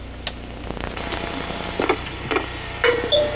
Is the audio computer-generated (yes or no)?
no